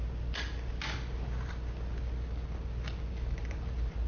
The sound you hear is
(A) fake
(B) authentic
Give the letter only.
B